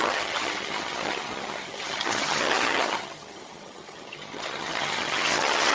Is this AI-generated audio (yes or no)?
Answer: yes